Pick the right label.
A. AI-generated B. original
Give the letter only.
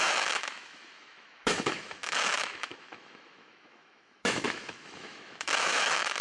A